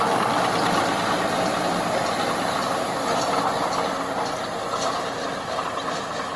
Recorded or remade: recorded